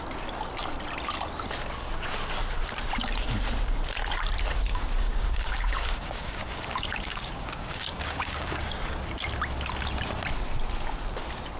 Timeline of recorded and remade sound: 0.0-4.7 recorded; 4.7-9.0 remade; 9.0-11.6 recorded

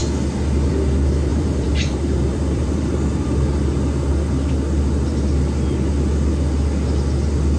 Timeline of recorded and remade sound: 0.0-1.3 recorded; 1.3-2.9 remade; 2.9-7.6 recorded

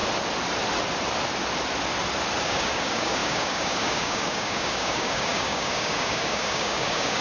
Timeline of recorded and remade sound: 0.0-2.4 recorded; 2.4-7.2 remade

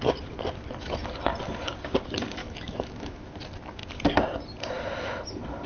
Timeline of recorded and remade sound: 0.0-2.4 recorded; 2.4-3.3 remade; 3.3-5.7 recorded

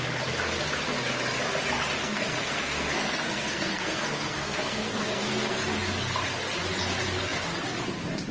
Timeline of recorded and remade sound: 0.0-2.0 recorded; 2.0-5.6 remade; 5.6-8.3 recorded

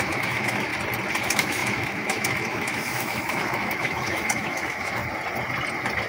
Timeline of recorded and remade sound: 0.0-0.7 remade; 0.7-1.2 recorded; 1.2-5.0 remade; 5.0-6.1 recorded

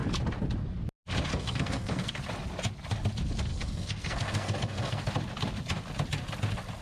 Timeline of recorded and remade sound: 0.0-1.3 recorded; 1.3-2.1 remade; 2.1-3.5 recorded; 3.5-5.1 remade; 5.1-6.8 recorded

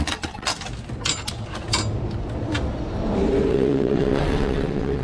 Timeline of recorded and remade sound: 0.0-0.5 remade; 0.5-3.5 recorded; 3.5-5.0 remade